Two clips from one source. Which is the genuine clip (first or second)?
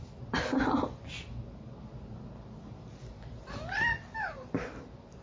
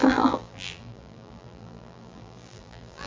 first